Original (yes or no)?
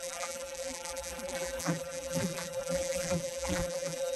no